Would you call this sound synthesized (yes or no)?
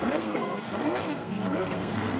yes